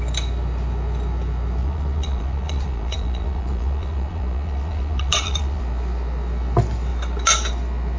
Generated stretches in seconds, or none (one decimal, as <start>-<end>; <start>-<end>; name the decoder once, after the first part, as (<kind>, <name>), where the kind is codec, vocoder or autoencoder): 1.6-5.6 (vocoder, Vocos)